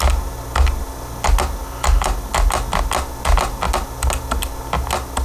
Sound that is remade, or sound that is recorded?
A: recorded